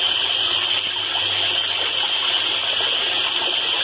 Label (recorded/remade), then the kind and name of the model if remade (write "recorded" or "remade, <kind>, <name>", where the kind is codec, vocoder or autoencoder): recorded